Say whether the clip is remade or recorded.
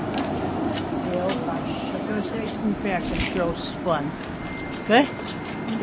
recorded